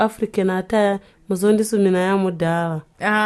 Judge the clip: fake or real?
real